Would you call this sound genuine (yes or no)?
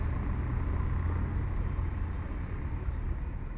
yes